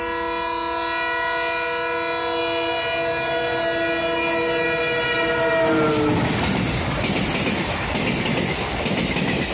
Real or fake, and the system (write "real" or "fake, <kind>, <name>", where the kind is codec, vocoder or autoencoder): real